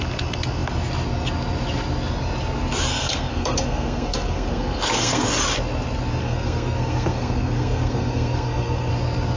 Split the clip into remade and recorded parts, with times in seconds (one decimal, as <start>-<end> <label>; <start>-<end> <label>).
0.0-2.9 recorded; 2.9-5.3 remade; 5.3-6.2 recorded; 6.2-8.9 remade; 8.9-9.4 recorded